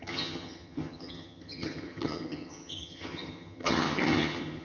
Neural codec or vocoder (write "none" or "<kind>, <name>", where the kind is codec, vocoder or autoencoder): vocoder, HiFi-GAN